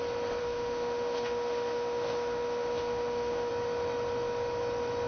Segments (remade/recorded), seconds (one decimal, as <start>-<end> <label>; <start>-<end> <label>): 0.0-0.4 recorded; 0.4-3.5 remade; 3.5-5.1 recorded